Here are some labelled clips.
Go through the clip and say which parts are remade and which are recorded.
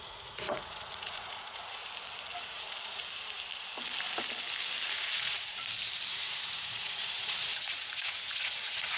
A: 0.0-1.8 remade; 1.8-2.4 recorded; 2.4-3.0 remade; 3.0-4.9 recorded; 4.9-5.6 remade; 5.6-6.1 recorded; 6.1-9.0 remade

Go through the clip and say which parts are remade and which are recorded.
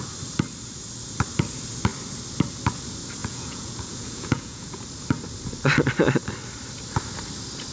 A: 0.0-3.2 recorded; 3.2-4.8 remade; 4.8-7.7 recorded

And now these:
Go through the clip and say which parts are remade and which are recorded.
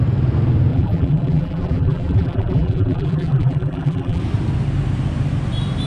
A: 0.0-0.7 recorded; 0.7-4.2 remade; 4.2-5.9 recorded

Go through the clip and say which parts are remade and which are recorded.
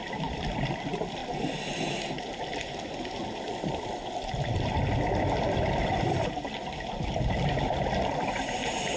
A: 0.0-1.2 remade; 1.2-2.5 recorded; 2.5-4.5 remade; 4.5-5.9 recorded; 5.9-9.0 remade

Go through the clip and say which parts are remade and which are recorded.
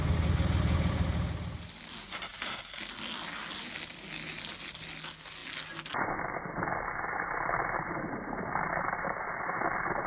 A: 0.0-10.1 recorded